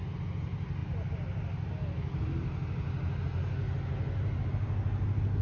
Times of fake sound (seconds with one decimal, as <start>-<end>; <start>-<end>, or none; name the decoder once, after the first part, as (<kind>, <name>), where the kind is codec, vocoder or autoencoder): none